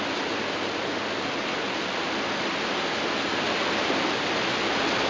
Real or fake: real